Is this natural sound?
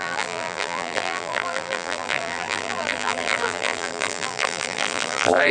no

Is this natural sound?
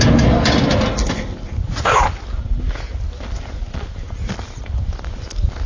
yes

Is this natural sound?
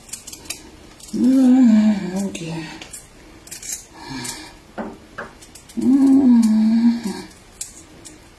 yes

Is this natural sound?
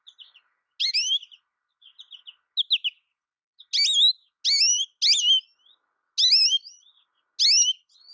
yes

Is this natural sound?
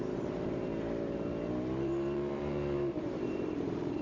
no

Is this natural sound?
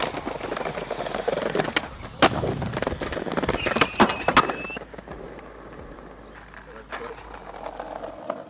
yes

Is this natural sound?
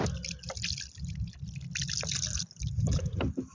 yes